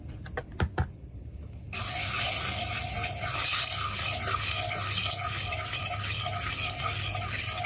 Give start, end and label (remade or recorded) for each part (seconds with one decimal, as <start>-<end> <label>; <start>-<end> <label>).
0.0-7.7 recorded